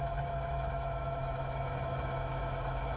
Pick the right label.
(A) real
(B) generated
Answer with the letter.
B